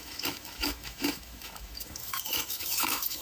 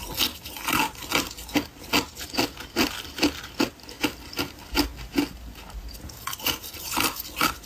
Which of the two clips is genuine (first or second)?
second